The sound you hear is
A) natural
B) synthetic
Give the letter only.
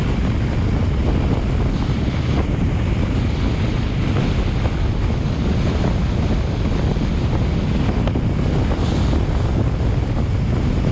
A